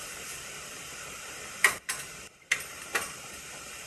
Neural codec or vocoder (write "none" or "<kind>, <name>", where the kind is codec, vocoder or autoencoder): vocoder, BigVGAN v2